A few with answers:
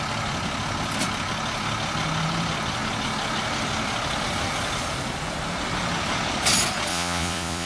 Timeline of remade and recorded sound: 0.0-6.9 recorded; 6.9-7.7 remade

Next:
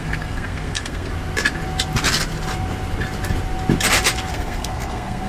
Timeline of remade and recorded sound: 0.0-1.1 remade; 1.1-4.3 recorded; 4.3-5.3 remade

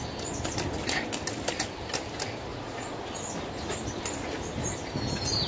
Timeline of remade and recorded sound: 0.0-2.5 recorded; 2.5-3.0 remade; 3.0-5.5 recorded

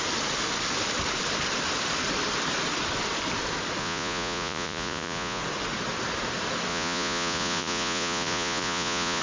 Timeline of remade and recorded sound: 0.0-3.8 recorded; 3.8-5.4 remade; 5.4-6.7 recorded; 6.7-9.2 remade

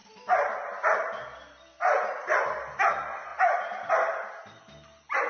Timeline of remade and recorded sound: 0.0-1.1 remade; 1.1-3.3 recorded; 3.3-3.9 remade; 3.9-5.3 recorded